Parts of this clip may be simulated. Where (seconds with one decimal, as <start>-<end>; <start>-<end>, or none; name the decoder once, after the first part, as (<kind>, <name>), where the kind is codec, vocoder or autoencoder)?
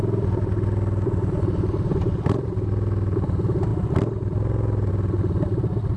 none